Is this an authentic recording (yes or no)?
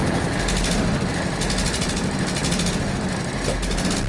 yes